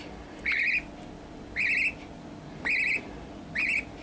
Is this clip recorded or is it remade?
recorded